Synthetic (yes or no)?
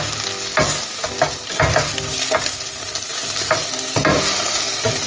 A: no